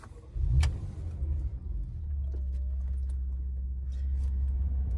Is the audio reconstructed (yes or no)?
no